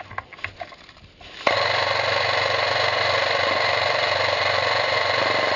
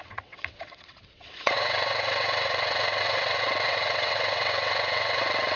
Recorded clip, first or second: first